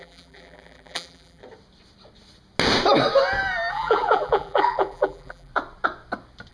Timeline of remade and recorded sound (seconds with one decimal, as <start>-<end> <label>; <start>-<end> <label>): 0.0-1.4 remade; 1.4-3.7 recorded; 3.7-5.5 remade; 5.5-6.5 recorded